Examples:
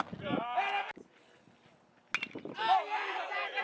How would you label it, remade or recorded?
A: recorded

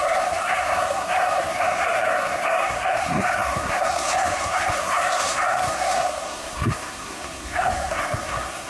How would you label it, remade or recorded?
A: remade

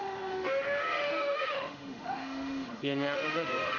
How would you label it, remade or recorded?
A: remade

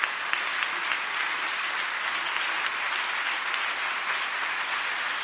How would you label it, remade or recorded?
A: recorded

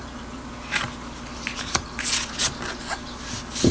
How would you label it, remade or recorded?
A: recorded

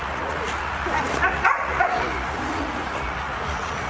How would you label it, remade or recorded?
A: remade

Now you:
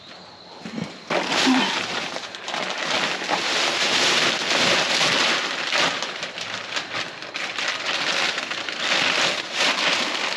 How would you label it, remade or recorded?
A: recorded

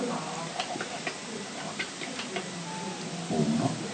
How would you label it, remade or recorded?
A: recorded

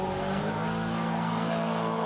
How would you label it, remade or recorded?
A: remade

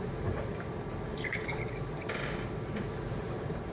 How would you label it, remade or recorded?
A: remade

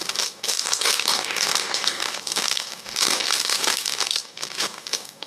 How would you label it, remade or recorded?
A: remade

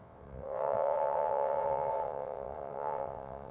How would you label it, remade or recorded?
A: remade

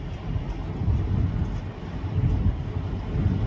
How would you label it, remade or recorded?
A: recorded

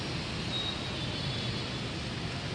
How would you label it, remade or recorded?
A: recorded